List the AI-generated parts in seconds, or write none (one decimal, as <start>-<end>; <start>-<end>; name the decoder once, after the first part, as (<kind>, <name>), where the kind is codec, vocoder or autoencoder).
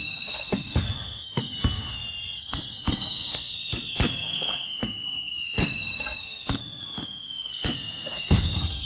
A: 0.0-8.9 (codec, SNAC)